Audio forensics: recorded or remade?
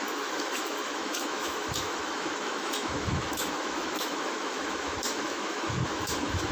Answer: remade